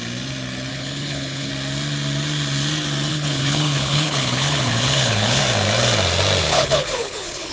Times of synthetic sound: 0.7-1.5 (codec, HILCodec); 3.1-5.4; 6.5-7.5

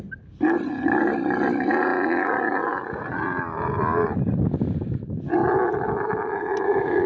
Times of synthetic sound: none

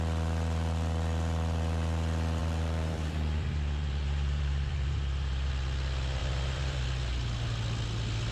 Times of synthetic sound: 2.4-5.5 (vocoder, BigVGAN v2); 6.2-6.8

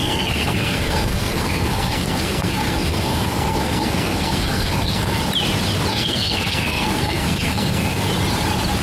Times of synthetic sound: 0.0-5.2 (codec, SNAC); 5.9-8.1

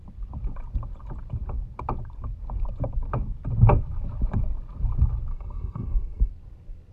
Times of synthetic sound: 5.3-6.3 (codec, SNAC)

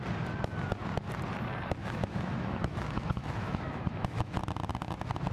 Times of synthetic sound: 1.8-4.4 (autoencoder, DAC-VAE)